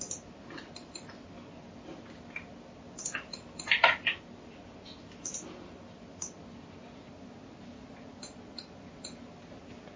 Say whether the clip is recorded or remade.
recorded